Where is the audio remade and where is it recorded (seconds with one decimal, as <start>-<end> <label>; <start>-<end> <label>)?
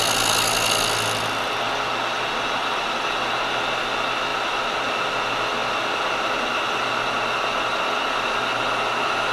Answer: 0.0-9.3 recorded